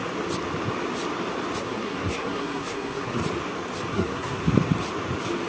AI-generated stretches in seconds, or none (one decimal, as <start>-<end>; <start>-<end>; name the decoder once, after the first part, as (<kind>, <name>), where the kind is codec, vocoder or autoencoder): 1.6-3.2 (codec, SNAC); 3.9-4.4